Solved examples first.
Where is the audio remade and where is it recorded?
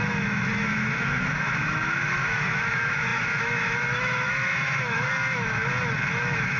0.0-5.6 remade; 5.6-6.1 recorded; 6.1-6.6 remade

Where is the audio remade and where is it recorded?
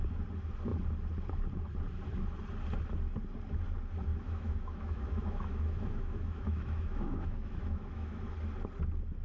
0.0-4.1 recorded; 4.1-8.3 remade; 8.3-9.2 recorded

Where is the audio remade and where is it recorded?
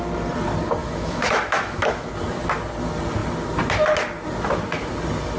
0.0-0.8 recorded; 0.8-2.1 remade; 2.1-5.4 recorded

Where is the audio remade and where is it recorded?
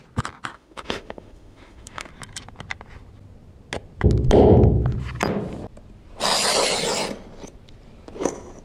0.0-0.5 recorded; 0.5-2.1 remade; 2.1-8.6 recorded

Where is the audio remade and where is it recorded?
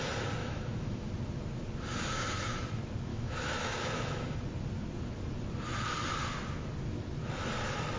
0.0-0.4 recorded; 0.4-1.1 remade; 1.1-3.1 recorded; 3.1-4.4 remade; 4.4-8.0 recorded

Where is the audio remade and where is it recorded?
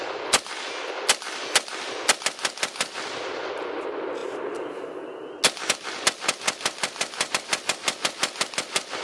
0.0-9.0 recorded